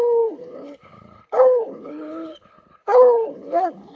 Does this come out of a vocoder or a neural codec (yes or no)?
yes